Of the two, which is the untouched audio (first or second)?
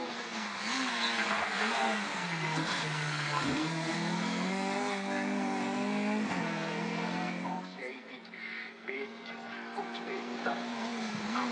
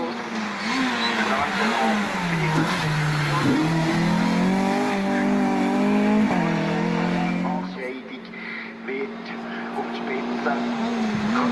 second